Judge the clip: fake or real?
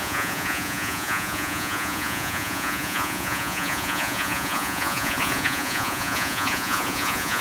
fake